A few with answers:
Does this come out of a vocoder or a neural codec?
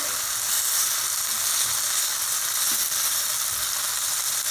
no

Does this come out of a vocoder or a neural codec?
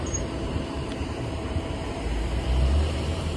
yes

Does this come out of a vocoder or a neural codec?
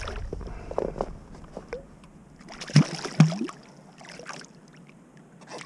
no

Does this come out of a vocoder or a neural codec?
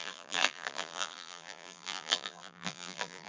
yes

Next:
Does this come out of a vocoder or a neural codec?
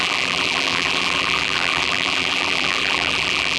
yes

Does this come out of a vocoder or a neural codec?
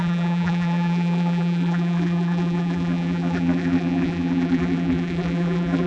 yes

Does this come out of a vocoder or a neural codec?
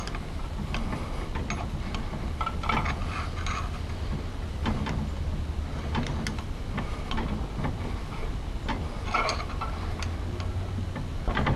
no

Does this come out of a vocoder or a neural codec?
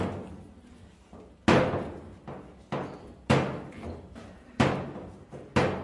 no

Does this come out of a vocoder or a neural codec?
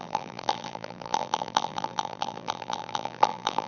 yes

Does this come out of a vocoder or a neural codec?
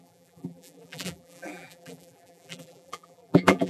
yes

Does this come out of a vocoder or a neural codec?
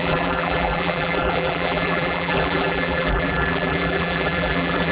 yes